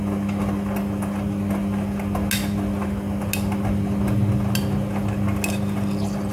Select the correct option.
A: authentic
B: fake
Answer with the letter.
A